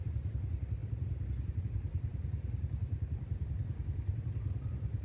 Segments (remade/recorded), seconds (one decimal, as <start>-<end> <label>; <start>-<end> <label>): 0.0-5.0 recorded